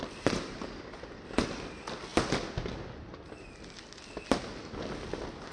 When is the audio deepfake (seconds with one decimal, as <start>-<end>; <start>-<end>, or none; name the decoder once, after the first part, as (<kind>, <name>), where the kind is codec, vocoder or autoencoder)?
none